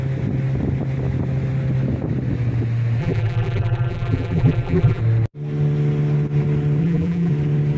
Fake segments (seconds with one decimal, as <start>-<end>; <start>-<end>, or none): 3.0-5.0; 6.8-7.3